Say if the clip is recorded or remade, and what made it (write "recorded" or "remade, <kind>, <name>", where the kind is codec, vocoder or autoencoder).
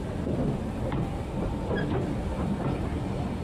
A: recorded